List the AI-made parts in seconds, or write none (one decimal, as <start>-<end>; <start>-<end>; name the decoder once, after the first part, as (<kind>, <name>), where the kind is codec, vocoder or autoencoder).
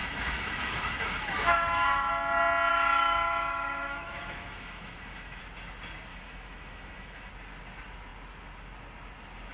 0.0-2.1 (autoencoder, DAC-VAE); 2.7-5.4; 6.1-7.3